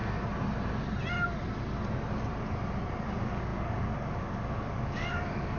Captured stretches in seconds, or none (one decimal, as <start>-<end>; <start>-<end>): 0.0-3.0